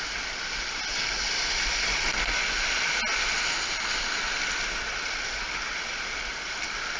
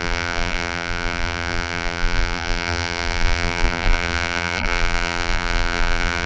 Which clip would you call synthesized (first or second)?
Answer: second